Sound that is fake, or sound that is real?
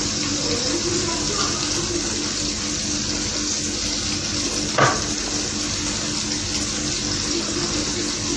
real